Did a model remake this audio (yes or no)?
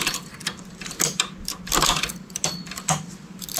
no